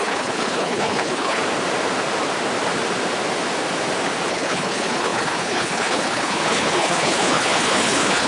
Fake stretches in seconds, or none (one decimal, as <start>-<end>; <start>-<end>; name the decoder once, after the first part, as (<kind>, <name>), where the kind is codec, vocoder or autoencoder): 0.0-1.4 (codec, HILCodec); 4.3-8.3